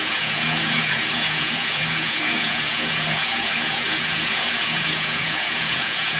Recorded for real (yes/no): no